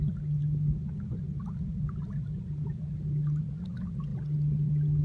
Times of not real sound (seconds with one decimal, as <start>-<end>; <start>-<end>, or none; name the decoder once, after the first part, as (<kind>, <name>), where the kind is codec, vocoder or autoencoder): none